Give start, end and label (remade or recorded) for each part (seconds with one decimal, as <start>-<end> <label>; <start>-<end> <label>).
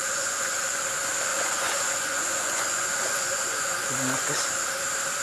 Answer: 0.0-0.8 remade; 0.8-1.3 recorded; 1.3-4.3 remade; 4.3-5.2 recorded